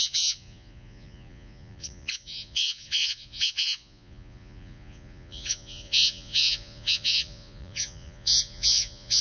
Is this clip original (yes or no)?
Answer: no